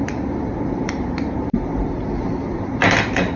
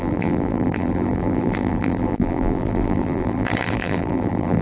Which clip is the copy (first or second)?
second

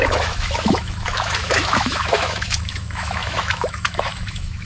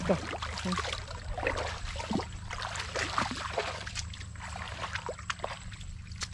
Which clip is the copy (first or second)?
first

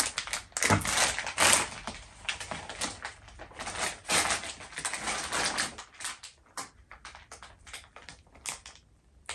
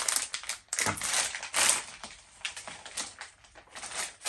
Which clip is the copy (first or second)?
second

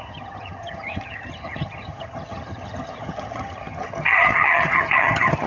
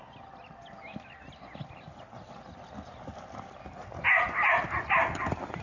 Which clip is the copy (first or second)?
first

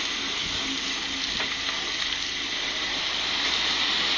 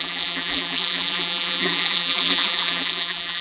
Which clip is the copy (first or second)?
second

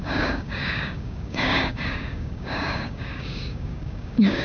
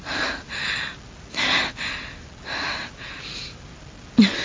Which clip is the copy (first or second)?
first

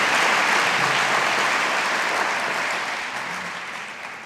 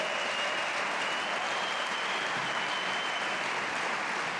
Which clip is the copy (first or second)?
first